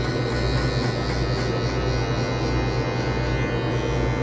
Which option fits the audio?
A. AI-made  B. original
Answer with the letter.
B